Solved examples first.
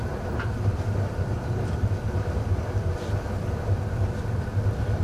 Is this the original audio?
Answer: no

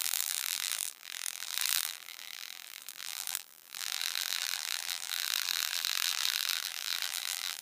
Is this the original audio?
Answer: no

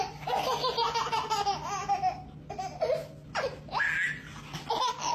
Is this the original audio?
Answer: yes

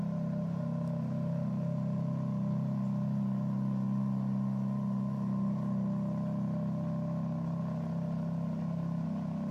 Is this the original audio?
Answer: yes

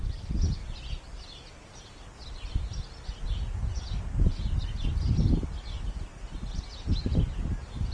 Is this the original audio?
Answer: yes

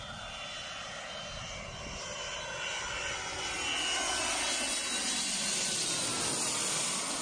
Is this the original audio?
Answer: yes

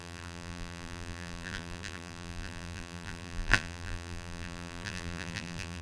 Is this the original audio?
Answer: no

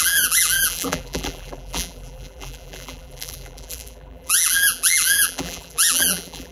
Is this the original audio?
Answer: no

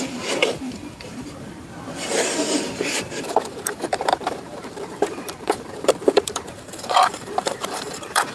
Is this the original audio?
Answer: no